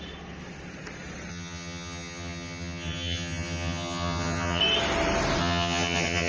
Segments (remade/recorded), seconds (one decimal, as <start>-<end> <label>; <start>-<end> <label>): 0.0-1.3 recorded; 1.3-4.6 remade; 4.6-5.4 recorded; 5.4-6.3 remade